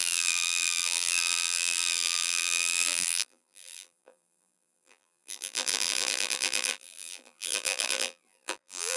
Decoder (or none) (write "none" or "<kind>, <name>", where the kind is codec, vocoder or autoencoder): vocoder, BigVGAN v2